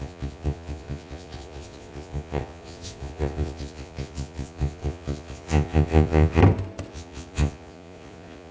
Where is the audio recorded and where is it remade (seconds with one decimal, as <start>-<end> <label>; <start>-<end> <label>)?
0.0-6.4 remade; 6.4-6.9 recorded; 6.9-8.5 remade